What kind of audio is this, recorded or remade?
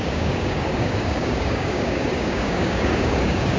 remade